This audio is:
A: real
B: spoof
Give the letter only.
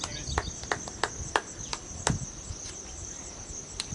A